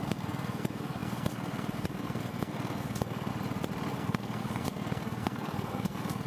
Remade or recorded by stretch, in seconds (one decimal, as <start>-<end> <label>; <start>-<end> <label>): 0.0-3.3 remade; 3.3-3.9 recorded; 3.9-6.3 remade